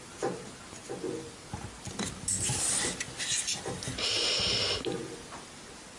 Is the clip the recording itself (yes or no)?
yes